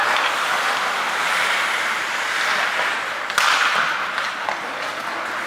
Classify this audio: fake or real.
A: real